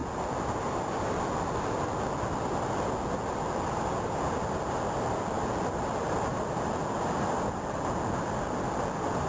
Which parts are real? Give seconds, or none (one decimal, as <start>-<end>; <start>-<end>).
0.0-9.3